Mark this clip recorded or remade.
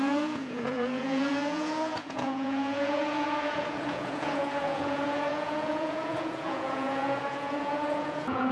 remade